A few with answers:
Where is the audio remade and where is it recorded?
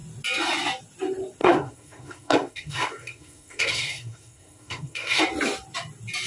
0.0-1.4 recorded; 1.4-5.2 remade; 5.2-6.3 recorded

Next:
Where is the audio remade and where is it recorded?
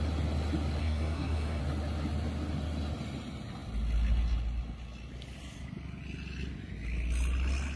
0.0-0.8 recorded; 0.8-1.6 remade; 1.6-7.8 recorded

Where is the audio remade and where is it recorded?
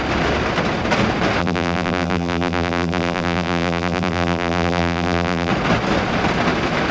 0.0-1.4 recorded; 1.4-5.5 remade; 5.5-6.9 recorded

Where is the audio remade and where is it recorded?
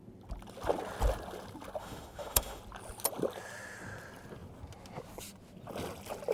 0.0-1.8 recorded; 1.8-2.6 remade; 2.6-6.3 recorded